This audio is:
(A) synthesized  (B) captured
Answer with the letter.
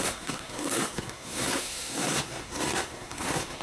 A